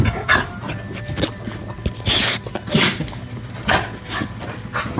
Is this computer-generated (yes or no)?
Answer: no